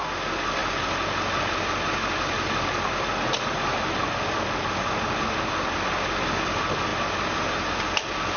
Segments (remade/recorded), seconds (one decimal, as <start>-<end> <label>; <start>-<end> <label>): 0.0-8.4 recorded